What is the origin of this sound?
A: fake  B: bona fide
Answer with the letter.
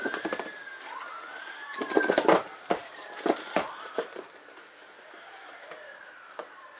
B